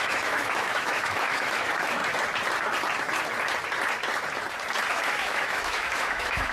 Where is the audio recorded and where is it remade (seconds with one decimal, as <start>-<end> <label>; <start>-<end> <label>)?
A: 0.0-2.0 remade; 2.0-4.9 recorded; 4.9-6.5 remade